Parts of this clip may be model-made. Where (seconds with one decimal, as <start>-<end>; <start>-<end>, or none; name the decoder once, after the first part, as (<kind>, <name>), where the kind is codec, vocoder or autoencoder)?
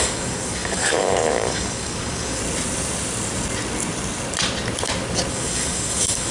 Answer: 0.0-2.4 (codec, DAC); 5.3-6.3